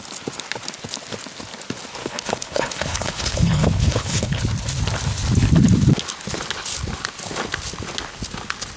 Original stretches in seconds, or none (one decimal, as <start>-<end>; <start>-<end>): 0.0-2.0; 4.4-8.8